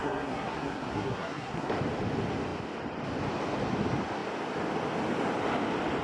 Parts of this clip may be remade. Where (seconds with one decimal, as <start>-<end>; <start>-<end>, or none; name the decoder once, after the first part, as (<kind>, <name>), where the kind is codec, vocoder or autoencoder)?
0.0-1.7 (codec, SNAC)